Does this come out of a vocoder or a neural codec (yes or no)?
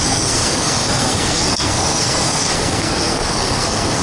yes